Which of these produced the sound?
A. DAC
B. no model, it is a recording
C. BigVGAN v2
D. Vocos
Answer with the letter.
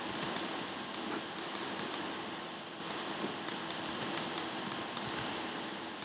B